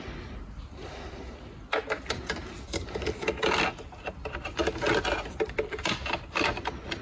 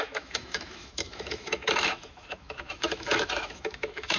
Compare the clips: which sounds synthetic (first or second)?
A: second